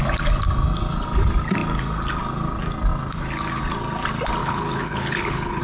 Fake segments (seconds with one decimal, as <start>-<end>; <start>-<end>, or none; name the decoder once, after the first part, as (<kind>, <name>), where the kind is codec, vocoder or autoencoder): 4.4-5.6 (codec, HILCodec)